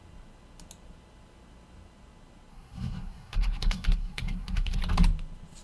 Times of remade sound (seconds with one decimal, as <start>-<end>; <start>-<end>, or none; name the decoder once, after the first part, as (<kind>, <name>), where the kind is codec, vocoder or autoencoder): 2.5-4.8 (codec, SNAC)